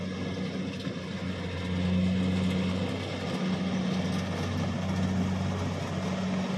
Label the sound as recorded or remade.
recorded